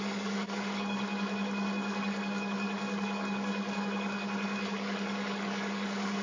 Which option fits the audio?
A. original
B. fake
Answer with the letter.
B